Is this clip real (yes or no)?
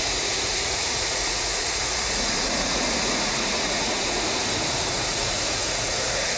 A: no